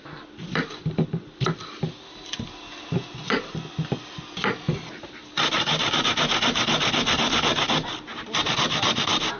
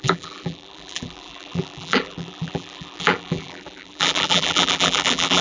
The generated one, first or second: second